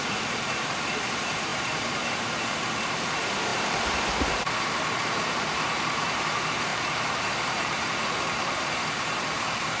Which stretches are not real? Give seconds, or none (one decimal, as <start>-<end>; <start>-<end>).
0.0-9.8